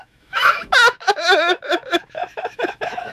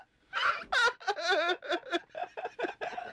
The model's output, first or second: first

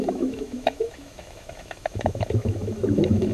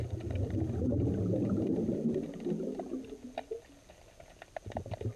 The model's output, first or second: first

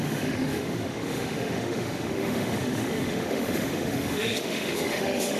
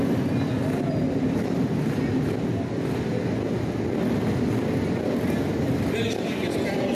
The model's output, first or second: first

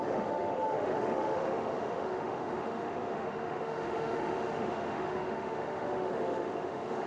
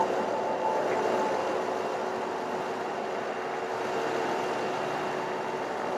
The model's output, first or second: first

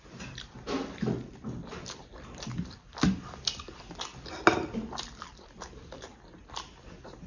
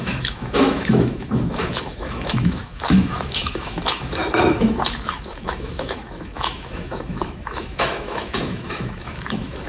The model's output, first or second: second